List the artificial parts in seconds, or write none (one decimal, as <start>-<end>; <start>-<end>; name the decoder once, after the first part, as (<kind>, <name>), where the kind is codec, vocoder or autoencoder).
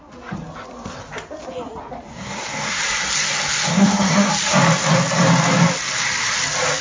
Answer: 2.1-2.8 (codec, SNAC); 3.7-4.3